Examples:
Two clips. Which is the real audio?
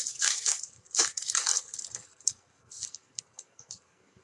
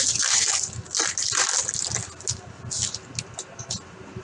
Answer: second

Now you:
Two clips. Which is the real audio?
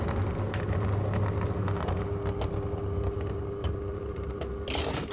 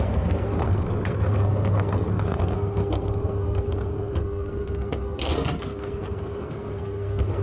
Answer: first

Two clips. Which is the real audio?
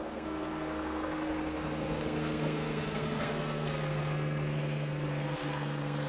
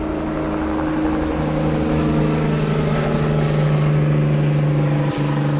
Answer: second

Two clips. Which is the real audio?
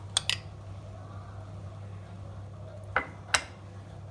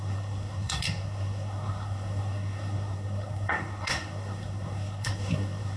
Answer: first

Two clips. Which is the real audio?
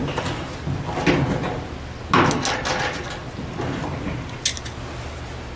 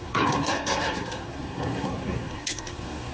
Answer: first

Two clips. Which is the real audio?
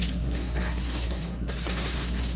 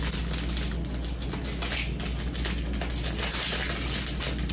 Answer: second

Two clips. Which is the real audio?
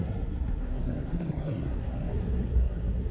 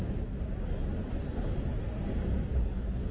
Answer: second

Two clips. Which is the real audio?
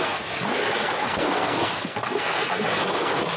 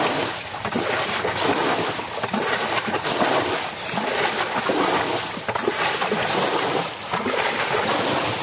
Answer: second